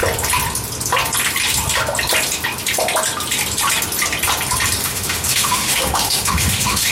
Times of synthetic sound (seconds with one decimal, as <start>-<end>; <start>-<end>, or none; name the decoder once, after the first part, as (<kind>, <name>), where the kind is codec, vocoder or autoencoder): 4.8-6.9 (autoencoder, DAC-VAE)